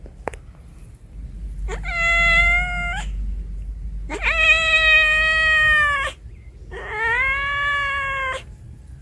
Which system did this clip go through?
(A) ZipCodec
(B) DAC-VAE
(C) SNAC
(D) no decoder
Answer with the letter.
D